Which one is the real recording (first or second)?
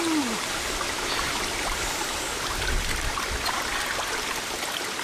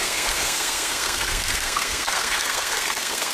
first